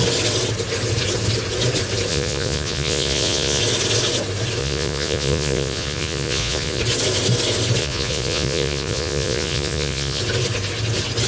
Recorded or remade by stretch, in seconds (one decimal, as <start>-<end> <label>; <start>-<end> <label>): 0.0-2.1 recorded; 2.1-3.6 remade; 3.6-4.6 recorded; 4.6-6.8 remade; 6.8-7.8 recorded; 7.8-10.2 remade; 10.2-11.3 recorded